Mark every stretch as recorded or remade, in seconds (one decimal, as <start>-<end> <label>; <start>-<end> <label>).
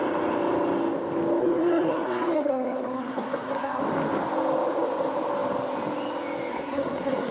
0.0-1.4 recorded; 1.4-3.8 remade; 3.8-6.5 recorded; 6.5-7.3 remade